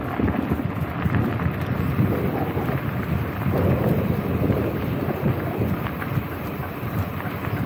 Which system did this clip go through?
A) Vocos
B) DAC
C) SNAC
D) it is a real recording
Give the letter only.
D